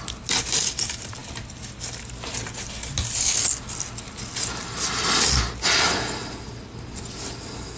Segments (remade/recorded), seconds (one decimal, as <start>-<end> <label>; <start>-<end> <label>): 0.0-7.8 recorded